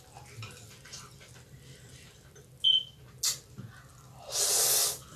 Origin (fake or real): real